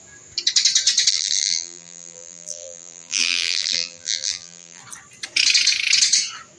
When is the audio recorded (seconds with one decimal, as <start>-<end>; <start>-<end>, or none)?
0.0-1.1; 4.8-6.6